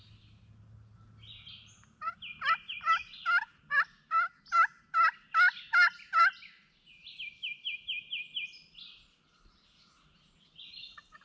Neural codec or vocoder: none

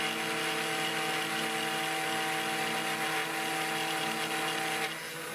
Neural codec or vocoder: none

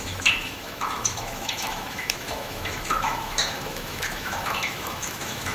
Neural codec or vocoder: autoencoder, DAC-VAE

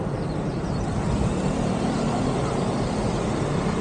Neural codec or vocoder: none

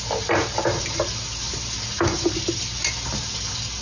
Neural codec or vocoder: none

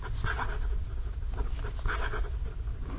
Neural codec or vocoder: none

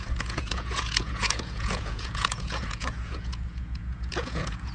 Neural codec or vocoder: vocoder, Vocos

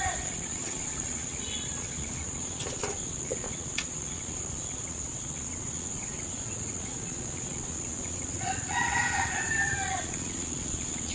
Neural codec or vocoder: vocoder, Vocos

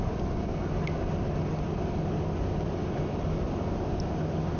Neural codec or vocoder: none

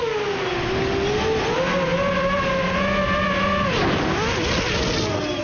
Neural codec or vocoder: none